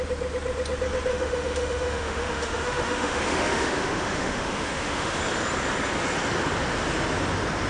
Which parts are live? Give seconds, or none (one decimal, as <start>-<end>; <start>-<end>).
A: 0.0-1.1; 5.2-7.7